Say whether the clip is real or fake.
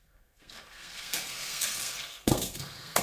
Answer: fake